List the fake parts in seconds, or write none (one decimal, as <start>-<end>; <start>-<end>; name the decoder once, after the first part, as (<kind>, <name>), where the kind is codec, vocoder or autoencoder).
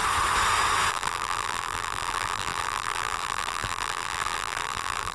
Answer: 0.9-5.1 (vocoder, BigVGAN v2)